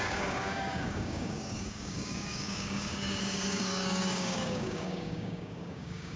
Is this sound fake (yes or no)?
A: yes